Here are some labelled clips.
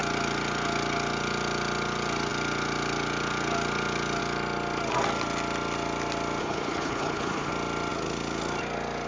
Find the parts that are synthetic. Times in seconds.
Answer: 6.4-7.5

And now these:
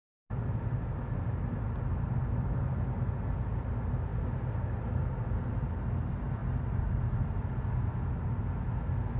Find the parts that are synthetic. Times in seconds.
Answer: none

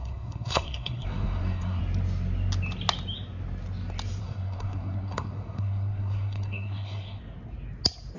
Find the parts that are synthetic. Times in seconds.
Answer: 0.0-1.8; 4.2-7.2

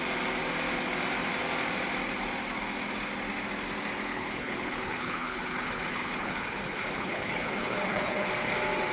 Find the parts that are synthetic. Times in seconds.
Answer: 4.1-8.3

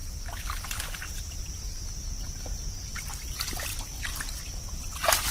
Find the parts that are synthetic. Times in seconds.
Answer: 3.7-4.4

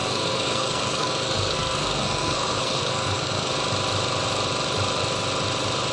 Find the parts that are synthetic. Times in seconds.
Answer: 0.0-3.5